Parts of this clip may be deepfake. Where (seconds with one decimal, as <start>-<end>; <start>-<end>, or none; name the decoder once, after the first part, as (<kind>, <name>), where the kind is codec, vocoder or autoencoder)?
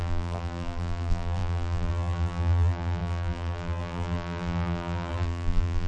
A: 0.0-5.9 (vocoder, BigVGAN v2)